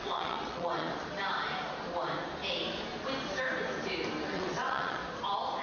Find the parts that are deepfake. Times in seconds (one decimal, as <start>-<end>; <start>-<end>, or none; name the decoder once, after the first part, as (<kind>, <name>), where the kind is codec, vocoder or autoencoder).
0.0-0.9 (vocoder, WaveNeXt); 4.3-5.0